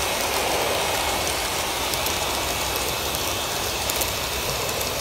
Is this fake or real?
real